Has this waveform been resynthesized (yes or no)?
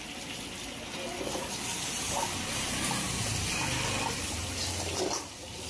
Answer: no